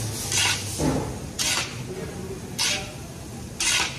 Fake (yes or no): no